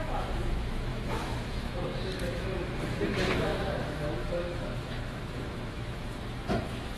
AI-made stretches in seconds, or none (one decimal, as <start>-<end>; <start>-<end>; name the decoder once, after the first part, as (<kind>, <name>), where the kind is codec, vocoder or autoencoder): 0.0-7.0 (autoencoder, DAC-VAE)